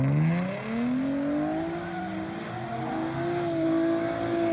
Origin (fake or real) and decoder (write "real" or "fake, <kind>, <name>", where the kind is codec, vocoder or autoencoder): real